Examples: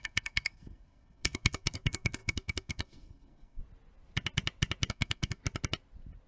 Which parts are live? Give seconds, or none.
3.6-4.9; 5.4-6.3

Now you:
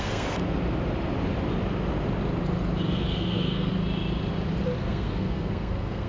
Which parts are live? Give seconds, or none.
0.4-2.9; 3.7-4.8

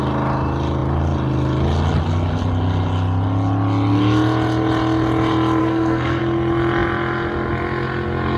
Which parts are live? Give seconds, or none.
0.0-5.6; 6.2-8.4

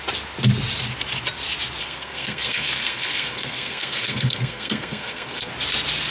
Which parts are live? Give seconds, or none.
0.0-1.8; 5.5-6.1

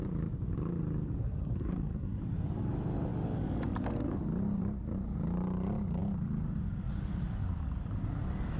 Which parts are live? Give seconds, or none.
0.0-1.2; 2.2-8.6